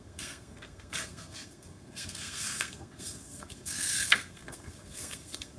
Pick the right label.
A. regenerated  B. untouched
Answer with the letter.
A